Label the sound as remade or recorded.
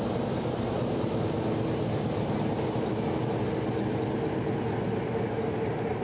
recorded